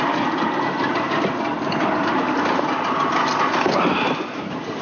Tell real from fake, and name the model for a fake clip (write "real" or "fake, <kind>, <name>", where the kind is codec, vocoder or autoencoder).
real